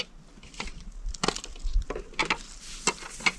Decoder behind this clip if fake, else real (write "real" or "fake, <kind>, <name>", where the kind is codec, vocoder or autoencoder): real